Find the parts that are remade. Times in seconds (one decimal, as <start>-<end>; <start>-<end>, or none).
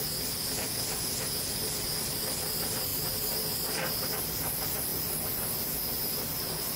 none